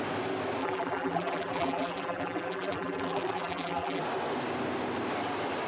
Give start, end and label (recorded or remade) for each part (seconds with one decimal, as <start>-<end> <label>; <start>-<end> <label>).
0.0-0.6 recorded; 0.6-4.0 remade; 4.0-5.7 recorded